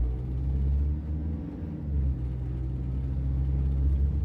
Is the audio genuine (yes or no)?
yes